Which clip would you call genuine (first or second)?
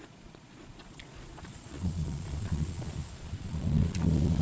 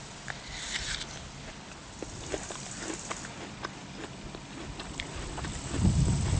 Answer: second